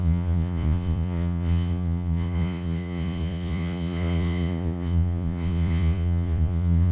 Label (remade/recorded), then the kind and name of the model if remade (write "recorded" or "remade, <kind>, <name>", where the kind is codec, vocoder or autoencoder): remade, vocoder, Vocos